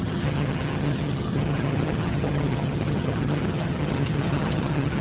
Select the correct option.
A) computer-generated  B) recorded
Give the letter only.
A